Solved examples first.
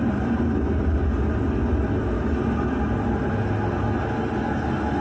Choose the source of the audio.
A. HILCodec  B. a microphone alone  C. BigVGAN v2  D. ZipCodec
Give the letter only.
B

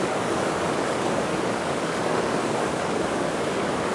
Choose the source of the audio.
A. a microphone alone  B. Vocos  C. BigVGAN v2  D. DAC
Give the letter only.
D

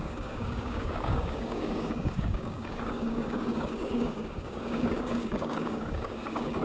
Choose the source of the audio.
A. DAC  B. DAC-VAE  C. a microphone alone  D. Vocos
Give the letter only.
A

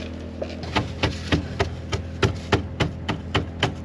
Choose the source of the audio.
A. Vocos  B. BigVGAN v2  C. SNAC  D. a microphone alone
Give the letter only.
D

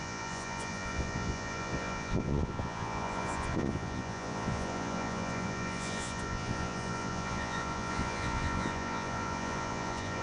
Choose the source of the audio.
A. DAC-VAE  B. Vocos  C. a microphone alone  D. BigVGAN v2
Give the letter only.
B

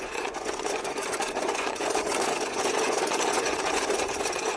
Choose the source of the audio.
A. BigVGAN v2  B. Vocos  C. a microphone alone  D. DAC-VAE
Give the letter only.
B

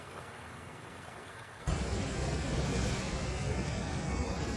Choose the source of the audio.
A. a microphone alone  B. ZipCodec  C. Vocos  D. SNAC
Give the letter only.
D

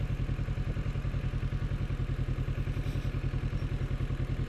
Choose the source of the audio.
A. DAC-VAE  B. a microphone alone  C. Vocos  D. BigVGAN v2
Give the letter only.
B